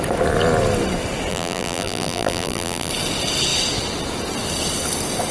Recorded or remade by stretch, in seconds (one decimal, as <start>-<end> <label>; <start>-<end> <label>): 0.0-1.3 recorded; 1.3-2.9 remade; 2.9-5.3 recorded